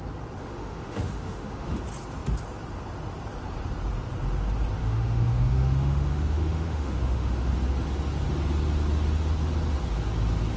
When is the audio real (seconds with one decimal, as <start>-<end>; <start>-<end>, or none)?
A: 0.0-0.4; 1.8-4.8; 7.5-10.6